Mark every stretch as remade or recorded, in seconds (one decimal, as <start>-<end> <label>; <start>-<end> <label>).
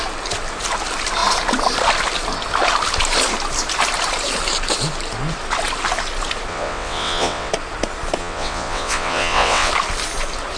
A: 0.0-6.5 recorded; 6.5-7.5 remade; 7.5-8.2 recorded; 8.2-9.7 remade; 9.7-10.6 recorded